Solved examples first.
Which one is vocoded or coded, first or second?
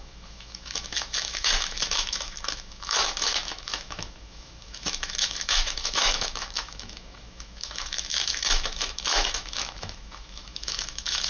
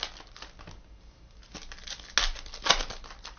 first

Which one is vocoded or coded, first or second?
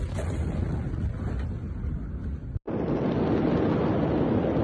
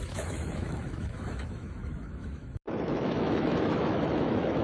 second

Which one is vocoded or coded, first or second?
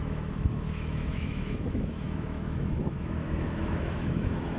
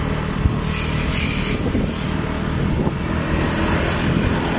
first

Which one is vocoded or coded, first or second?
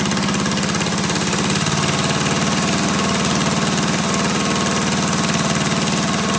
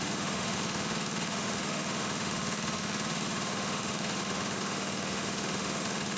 second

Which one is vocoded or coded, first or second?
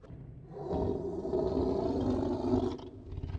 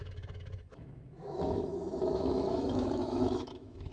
second